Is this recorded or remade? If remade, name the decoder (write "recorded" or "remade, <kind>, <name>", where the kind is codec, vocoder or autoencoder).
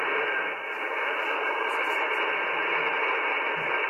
recorded